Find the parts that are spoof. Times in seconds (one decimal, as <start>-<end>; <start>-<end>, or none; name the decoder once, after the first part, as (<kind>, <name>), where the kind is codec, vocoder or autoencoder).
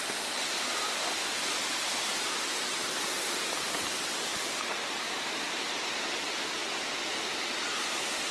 4.3-5.2 (vocoder, BigVGAN v2)